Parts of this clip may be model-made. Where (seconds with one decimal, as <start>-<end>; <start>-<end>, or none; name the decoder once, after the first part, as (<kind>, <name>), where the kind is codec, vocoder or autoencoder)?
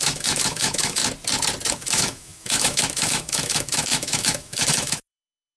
0.0-1.0 (autoencoder, DAC-VAE); 1.7-5.6